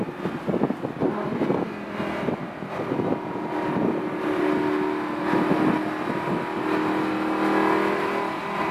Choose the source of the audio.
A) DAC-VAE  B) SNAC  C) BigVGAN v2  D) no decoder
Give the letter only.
D